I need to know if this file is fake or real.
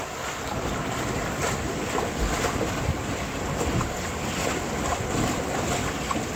real